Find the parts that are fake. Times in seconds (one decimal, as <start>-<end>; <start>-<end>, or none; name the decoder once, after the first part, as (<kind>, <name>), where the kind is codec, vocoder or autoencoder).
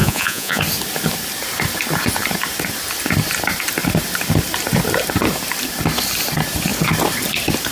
0.0-0.6 (vocoder, Vocos)